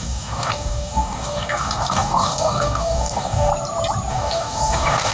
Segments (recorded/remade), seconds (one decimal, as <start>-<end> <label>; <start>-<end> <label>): 0.0-3.5 remade; 3.5-4.1 recorded; 4.1-5.1 remade